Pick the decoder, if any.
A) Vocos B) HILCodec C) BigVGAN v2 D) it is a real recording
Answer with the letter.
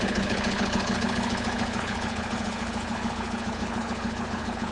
B